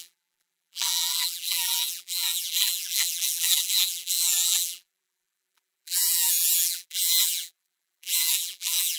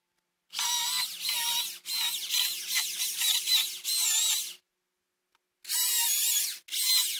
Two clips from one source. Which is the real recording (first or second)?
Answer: second